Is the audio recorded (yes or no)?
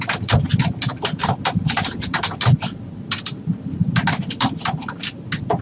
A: no